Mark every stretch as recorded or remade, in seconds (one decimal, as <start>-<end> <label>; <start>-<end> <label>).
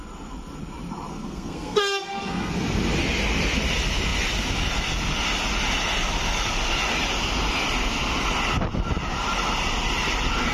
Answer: 0.0-1.1 recorded; 1.1-2.5 remade; 2.5-10.5 recorded